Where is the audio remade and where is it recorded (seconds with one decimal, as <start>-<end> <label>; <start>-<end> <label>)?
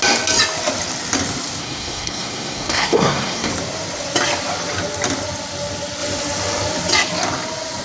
0.0-1.6 recorded; 1.6-3.5 remade; 3.5-7.8 recorded